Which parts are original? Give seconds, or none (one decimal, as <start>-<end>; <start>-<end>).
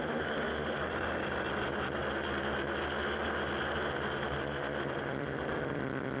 2.0-5.0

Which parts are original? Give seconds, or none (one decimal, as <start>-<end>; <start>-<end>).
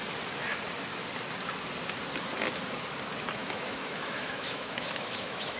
0.0-3.4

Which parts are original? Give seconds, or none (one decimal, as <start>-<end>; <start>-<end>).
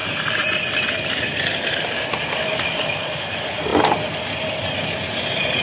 0.0-5.6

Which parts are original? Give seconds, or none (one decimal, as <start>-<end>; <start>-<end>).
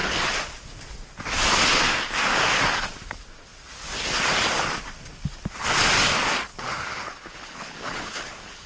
0.0-6.5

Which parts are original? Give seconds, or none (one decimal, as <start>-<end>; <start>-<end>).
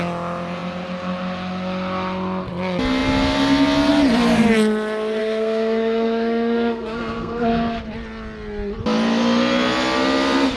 0.0-5.2; 7.8-10.6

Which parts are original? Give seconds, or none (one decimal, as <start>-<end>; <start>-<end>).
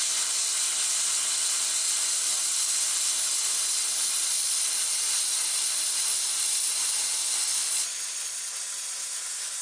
0.0-7.6; 8.6-9.6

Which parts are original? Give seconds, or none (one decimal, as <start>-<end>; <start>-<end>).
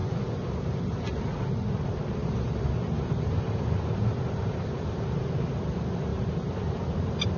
0.0-2.2; 5.6-6.1